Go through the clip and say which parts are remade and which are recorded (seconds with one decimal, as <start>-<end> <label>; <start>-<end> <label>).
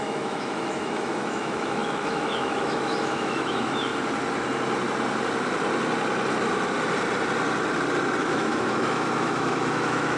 0.0-3.9 remade; 3.9-8.2 recorded; 8.2-10.2 remade